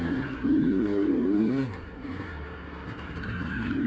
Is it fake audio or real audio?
fake